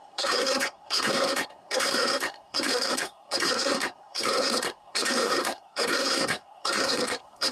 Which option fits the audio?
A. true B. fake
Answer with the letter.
B